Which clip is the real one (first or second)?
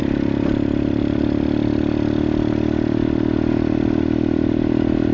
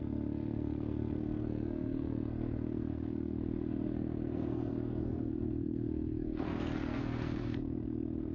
first